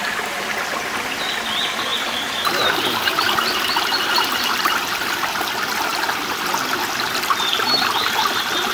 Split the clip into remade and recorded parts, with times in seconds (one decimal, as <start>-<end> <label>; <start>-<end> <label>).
0.0-1.9 recorded; 1.9-3.1 remade; 3.1-8.7 recorded